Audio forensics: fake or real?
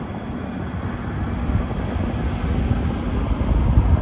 real